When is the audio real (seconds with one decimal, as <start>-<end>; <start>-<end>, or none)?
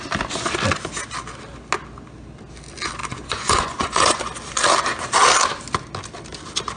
0.0-3.0; 4.2-6.8